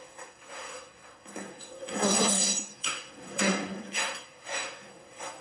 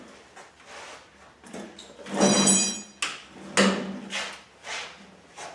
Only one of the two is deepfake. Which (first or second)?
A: first